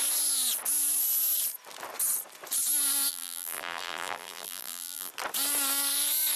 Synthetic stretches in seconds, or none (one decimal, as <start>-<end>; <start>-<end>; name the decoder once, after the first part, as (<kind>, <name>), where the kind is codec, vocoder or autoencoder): 3.1-5.1 (vocoder, BigVGAN v2)